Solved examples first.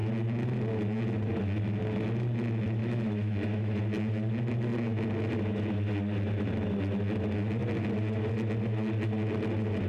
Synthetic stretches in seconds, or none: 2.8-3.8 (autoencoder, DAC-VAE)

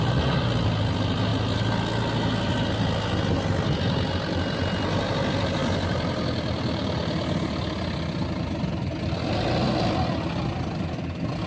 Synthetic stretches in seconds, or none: none

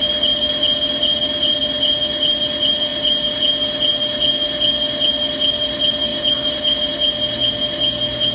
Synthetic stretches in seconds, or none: none

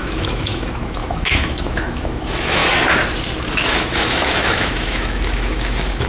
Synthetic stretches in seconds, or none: 0.0-2.6 (autoencoder, DAC-VAE); 3.5-6.1

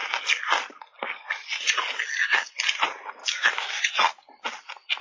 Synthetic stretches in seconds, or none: 3.2-3.7 (autoencoder, DAC-VAE)

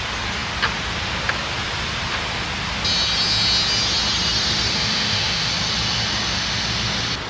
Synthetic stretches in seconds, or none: 4.7-5.5 (autoencoder, DAC-VAE)

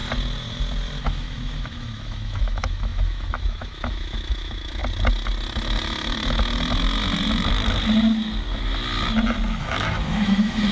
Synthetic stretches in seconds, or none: 1.0-4.8 (autoencoder, DAC-VAE); 9.6-10.7